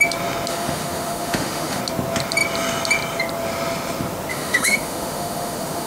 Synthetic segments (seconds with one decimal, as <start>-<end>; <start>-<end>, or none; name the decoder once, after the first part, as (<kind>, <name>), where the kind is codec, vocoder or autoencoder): 0.5-1.8 (autoencoder, DAC-VAE); 4.3-5.9